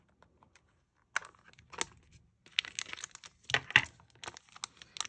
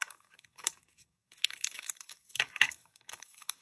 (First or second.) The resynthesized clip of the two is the second